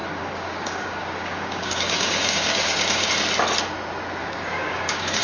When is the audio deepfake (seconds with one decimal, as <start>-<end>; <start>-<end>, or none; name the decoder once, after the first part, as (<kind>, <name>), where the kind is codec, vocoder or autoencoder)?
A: 0.0-3.1 (codec, DAC); 4.2-5.2